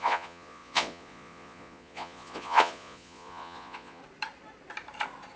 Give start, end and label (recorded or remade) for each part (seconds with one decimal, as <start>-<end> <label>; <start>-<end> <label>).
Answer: 0.0-4.0 remade; 4.0-5.4 recorded